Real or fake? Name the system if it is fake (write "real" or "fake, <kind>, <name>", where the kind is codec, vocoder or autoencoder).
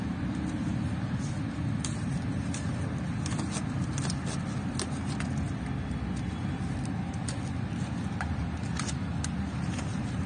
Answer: real